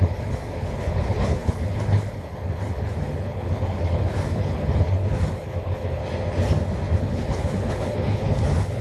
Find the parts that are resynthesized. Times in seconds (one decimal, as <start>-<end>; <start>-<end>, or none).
0.0-6.0; 7.0-8.8